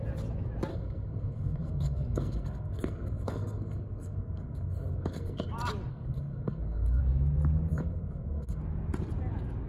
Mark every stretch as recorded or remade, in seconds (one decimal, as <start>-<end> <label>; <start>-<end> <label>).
0.0-0.7 recorded; 0.7-5.5 remade; 5.5-5.9 recorded; 5.9-7.0 remade; 7.0-7.7 recorded; 7.7-8.6 remade; 8.6-9.7 recorded